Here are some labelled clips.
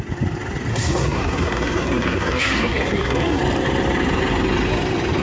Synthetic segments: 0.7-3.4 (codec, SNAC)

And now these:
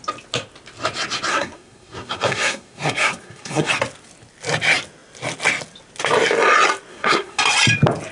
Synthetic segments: 1.3-3.7 (codec, SNAC); 6.9-7.4

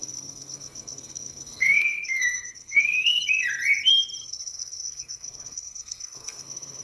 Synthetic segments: 0.0-3.2 (codec, SNAC); 4.2-6.8